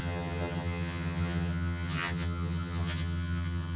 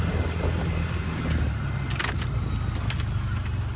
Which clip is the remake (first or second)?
first